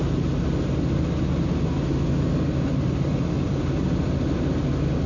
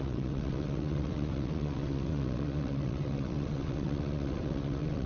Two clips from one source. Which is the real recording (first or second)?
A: first